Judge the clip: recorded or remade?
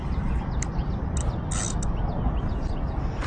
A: recorded